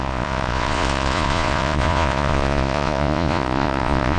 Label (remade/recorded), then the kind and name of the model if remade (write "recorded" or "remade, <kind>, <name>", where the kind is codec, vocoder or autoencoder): remade, vocoder, Vocos